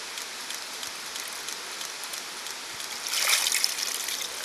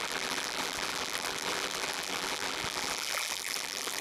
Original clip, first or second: first